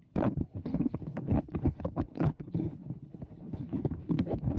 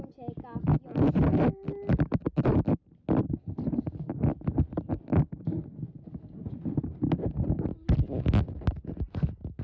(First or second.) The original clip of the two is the second